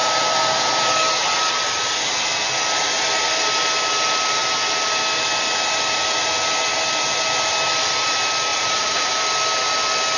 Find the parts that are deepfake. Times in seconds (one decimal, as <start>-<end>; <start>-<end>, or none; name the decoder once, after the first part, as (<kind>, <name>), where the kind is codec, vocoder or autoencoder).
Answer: 8.5-9.1 (vocoder, Vocos)